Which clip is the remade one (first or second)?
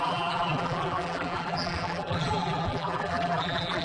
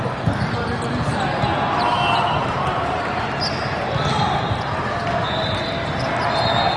first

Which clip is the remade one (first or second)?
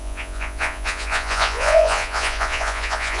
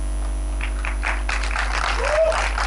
first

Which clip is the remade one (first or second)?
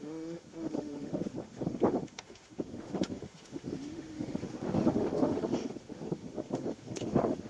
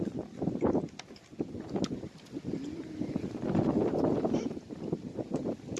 first